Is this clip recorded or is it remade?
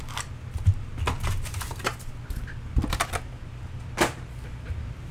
recorded